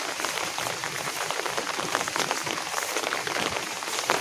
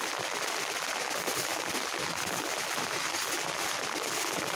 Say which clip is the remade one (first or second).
first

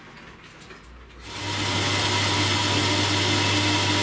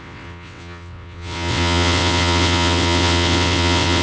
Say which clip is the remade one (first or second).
second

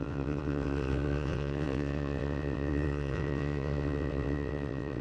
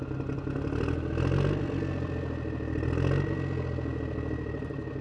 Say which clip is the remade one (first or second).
first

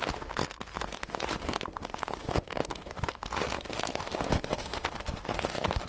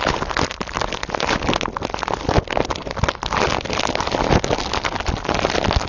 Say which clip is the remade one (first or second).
first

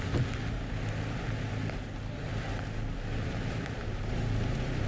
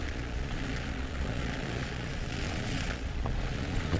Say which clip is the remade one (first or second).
second